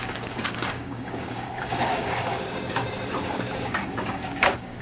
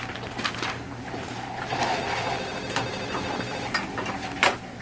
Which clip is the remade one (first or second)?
first